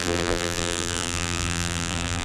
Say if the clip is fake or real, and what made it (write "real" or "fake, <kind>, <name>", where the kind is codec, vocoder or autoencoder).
fake, vocoder, BigVGAN v2